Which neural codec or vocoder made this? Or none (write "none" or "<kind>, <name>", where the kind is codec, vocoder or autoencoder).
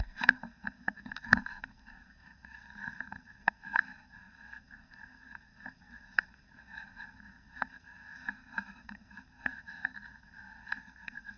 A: codec, SNAC